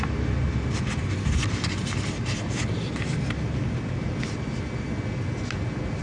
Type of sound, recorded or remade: recorded